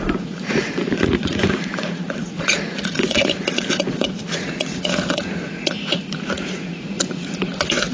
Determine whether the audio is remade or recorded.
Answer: remade